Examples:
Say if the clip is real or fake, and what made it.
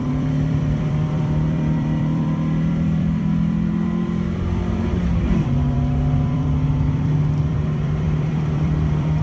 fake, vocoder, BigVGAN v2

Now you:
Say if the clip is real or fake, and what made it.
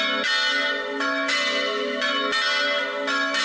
real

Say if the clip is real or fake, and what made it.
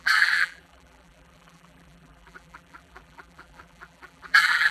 fake, vocoder, BigVGAN v2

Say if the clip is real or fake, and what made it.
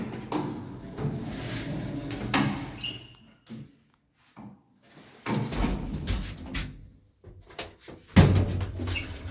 real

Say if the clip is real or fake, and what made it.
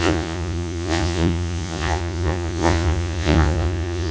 fake, vocoder, Vocos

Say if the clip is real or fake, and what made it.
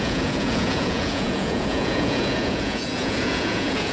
fake, vocoder, Vocos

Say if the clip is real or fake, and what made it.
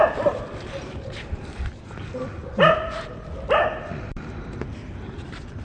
real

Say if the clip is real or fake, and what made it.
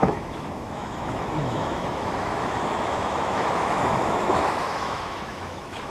fake, autoencoder, DAC-VAE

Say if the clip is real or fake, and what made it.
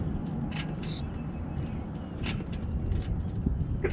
real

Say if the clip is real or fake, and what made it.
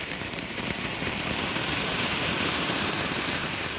fake, vocoder, BigVGAN v2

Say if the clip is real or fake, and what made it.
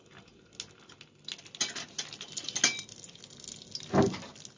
real